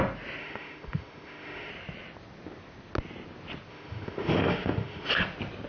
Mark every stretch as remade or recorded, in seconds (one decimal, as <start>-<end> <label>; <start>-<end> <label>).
0.0-0.4 recorded; 0.4-1.7 remade; 1.7-3.7 recorded; 3.7-5.1 remade; 5.1-5.7 recorded